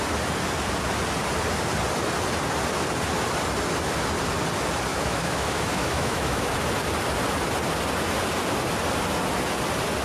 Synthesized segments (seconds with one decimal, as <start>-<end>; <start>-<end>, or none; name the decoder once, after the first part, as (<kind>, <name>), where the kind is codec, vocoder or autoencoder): 4.9-6.5 (autoencoder, DAC-VAE)